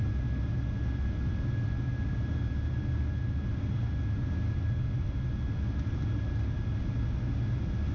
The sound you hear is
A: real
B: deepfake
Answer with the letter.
A